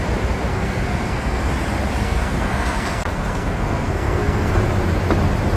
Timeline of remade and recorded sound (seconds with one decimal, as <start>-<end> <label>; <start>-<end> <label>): 0.0-0.5 recorded; 0.5-1.4 remade; 1.4-2.0 recorded; 2.0-4.5 remade; 4.5-5.6 recorded